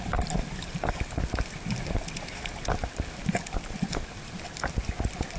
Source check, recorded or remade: recorded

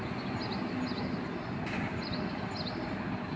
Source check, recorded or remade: recorded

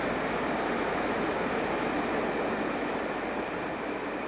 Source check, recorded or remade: recorded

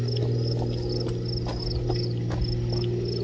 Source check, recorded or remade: recorded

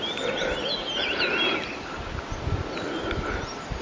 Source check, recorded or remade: recorded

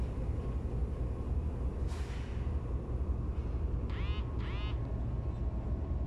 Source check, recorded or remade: recorded